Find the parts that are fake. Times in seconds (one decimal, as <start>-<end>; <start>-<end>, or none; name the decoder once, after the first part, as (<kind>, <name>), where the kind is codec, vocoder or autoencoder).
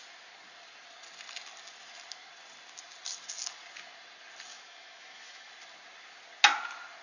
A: 4.5-5.5 (autoencoder, DAC-VAE)